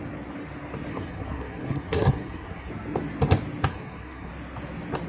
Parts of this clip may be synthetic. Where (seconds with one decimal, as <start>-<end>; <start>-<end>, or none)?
0.9-2.7; 3.7-4.3